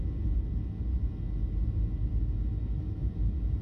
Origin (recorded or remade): recorded